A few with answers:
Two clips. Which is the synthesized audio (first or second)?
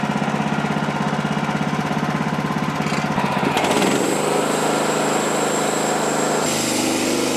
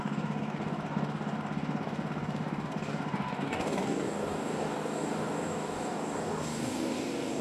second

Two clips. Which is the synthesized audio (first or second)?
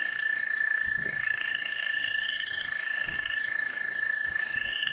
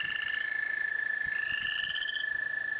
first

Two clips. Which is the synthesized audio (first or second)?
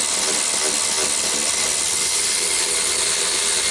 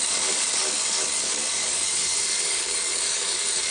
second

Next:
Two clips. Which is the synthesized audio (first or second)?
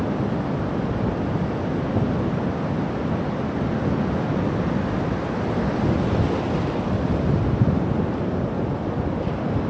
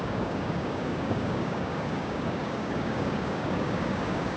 second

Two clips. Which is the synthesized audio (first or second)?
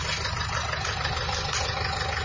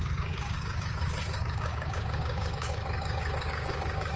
second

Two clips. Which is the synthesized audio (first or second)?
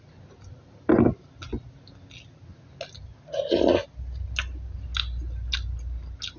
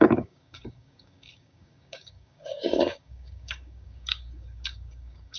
second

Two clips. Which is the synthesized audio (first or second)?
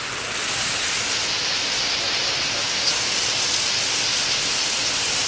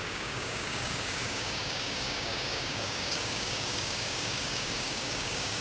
second